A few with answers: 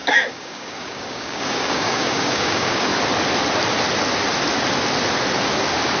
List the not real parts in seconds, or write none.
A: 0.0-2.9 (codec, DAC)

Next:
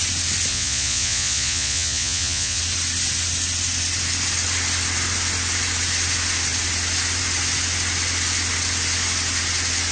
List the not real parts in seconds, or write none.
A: 0.5-2.6 (vocoder, Vocos)